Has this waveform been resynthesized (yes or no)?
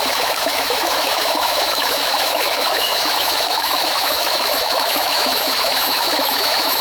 yes